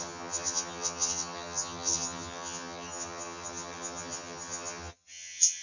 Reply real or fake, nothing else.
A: fake